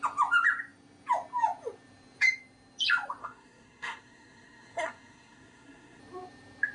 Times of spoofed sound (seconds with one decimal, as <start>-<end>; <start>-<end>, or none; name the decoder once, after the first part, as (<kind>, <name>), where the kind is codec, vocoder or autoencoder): 3.2-6.0 (codec, SNAC)

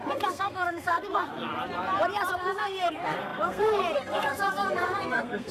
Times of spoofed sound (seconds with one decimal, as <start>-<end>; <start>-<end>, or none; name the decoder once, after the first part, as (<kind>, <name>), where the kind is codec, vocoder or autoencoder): 0.0-1.5 (codec, SNAC); 2.3-5.5